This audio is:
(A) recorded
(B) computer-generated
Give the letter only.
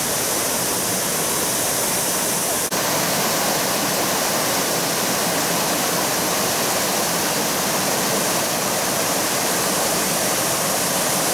B